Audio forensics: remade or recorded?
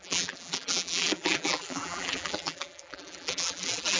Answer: remade